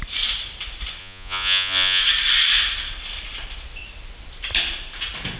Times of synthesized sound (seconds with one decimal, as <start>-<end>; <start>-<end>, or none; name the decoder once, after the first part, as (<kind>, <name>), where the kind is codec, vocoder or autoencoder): 1.0-2.0 (vocoder, Vocos)